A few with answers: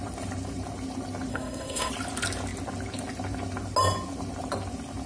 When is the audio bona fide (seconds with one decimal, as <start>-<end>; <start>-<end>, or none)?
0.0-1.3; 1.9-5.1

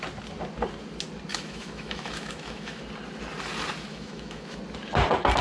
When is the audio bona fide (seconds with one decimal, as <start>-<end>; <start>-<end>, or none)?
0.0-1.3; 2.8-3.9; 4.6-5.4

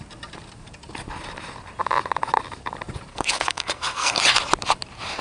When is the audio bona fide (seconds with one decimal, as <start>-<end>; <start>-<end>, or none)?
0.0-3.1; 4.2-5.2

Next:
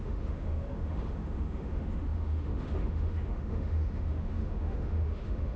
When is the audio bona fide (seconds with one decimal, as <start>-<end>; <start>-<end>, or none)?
none

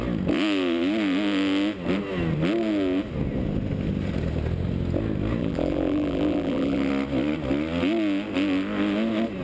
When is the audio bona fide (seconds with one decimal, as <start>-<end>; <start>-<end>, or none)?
0.0-5.4; 6.9-9.4